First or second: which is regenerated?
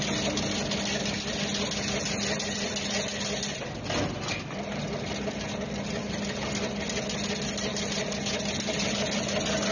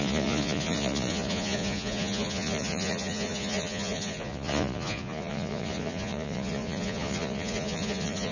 second